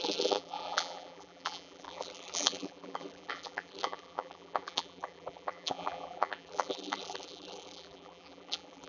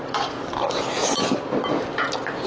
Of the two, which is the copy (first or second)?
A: first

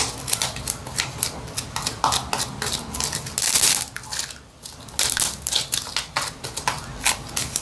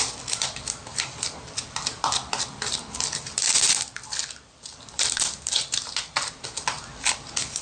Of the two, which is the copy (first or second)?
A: second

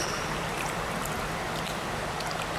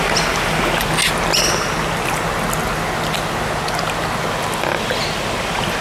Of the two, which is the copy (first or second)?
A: first